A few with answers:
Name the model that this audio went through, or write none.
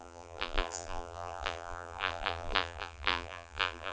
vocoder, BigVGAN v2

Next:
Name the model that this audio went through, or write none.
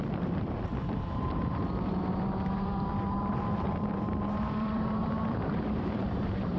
vocoder, BigVGAN v2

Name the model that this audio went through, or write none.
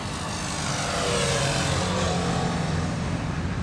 none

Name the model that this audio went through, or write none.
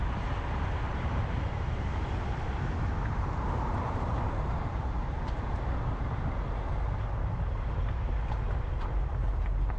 vocoder, BigVGAN v2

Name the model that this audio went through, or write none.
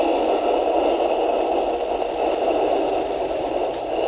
none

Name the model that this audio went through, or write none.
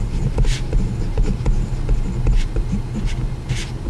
none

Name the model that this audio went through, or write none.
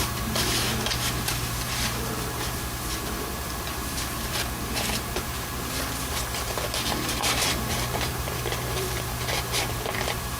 vocoder, BigVGAN v2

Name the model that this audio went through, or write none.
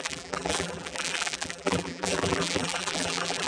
vocoder, BigVGAN v2